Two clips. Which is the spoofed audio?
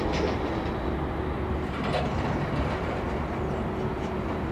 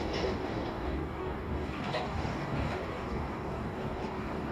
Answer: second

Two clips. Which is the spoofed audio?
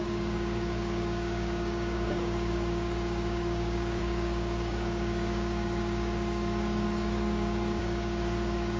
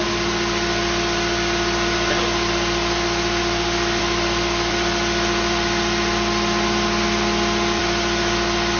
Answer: first